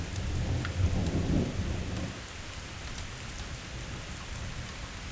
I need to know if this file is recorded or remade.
recorded